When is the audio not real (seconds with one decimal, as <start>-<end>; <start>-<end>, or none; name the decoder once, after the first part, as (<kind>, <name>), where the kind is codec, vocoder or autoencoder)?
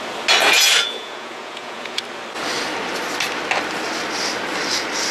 0.4-2.0 (vocoder, Vocos)